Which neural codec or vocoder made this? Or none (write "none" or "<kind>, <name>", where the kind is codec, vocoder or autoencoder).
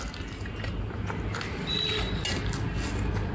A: none